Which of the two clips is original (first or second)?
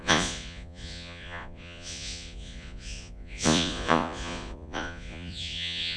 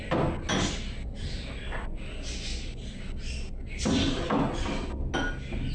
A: second